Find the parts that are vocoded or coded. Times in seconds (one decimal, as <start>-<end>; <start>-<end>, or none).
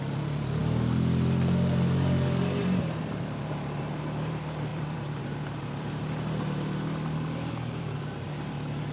0.0-0.6; 2.6-8.9